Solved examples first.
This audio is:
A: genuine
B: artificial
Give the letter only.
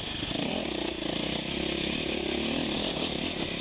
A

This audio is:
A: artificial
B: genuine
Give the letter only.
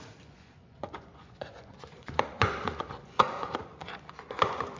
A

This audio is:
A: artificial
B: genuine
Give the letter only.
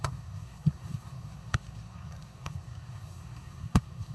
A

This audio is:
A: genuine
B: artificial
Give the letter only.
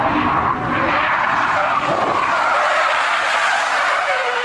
A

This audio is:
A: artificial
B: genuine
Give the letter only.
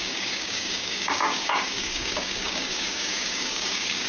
A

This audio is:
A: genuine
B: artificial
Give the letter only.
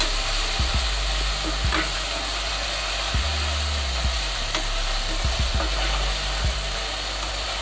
A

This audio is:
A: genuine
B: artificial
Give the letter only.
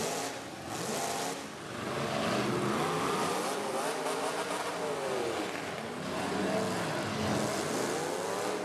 A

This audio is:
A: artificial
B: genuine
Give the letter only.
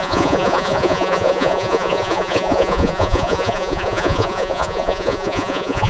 A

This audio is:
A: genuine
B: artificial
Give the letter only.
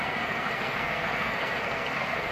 B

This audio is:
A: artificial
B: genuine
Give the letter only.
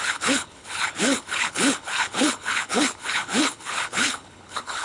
A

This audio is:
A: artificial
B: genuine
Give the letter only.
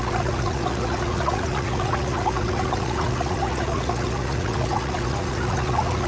A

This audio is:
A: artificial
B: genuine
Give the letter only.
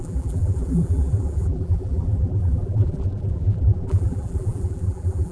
A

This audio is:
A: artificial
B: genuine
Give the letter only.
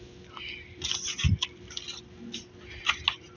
B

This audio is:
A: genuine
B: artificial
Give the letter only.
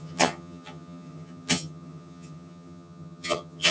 B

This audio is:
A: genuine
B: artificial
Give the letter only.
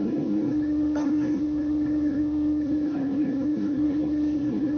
B